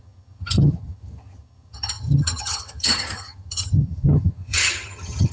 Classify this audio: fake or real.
fake